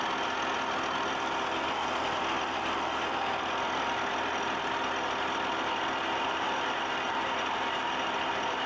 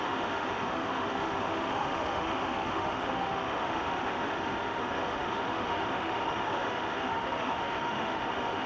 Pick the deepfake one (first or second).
second